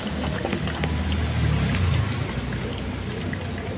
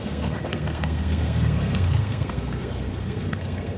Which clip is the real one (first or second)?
first